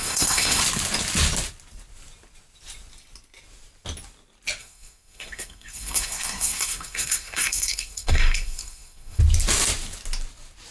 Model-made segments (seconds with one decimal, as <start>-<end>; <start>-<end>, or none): 0.0-0.6; 4.6-9.2